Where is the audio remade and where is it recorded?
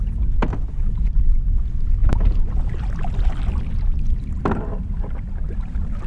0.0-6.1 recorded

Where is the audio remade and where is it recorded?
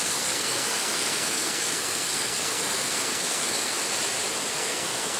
0.0-3.8 remade; 3.8-4.5 recorded; 4.5-5.2 remade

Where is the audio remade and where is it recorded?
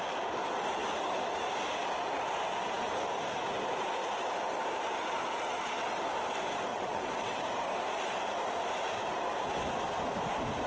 0.0-6.7 recorded; 6.7-7.4 remade; 7.4-10.7 recorded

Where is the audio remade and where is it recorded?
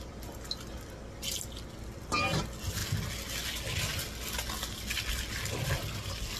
0.0-6.4 recorded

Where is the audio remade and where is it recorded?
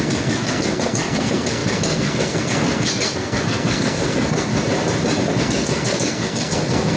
0.0-4.5 remade; 4.5-5.4 recorded; 5.4-7.0 remade